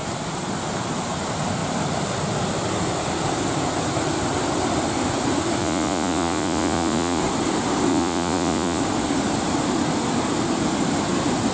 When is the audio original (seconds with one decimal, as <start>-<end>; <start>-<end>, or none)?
0.0-5.6; 7.2-7.9; 8.8-11.5